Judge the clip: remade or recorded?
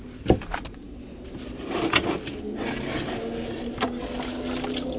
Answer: recorded